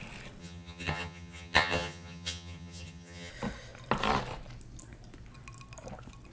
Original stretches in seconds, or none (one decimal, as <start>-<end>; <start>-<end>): 0.0-0.4; 3.3-6.3